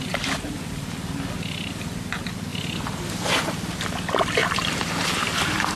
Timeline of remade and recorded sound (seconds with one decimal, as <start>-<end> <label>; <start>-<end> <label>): 0.0-4.4 recorded; 4.4-5.8 remade

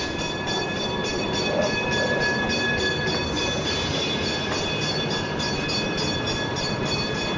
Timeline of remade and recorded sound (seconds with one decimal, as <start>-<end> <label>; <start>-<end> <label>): 0.0-3.2 remade; 3.2-3.9 recorded; 3.9-7.4 remade

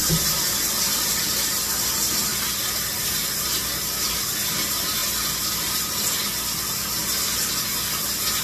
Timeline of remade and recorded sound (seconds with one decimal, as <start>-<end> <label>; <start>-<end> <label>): 0.0-2.3 recorded; 2.3-3.2 remade; 3.2-8.4 recorded

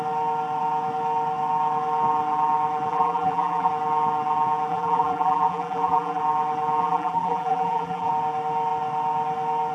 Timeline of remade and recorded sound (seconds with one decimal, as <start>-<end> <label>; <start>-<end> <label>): 0.0-2.9 recorded; 2.9-3.7 remade; 3.7-4.7 recorded; 4.7-6.2 remade; 6.2-6.8 recorded; 6.8-8.1 remade; 8.1-9.7 recorded

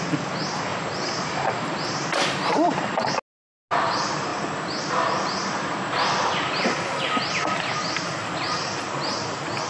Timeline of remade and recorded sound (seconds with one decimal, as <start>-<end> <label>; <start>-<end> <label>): 0.0-0.7 recorded; 0.7-3.1 remade; 3.1-4.3 recorded; 4.3-6.7 remade; 6.7-9.7 recorded

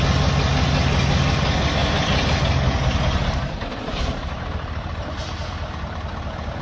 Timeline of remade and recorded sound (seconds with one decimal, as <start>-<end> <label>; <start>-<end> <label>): 0.0-1.8 recorded; 1.8-2.4 remade; 2.4-3.7 recorded; 3.7-5.1 remade; 5.1-6.6 recorded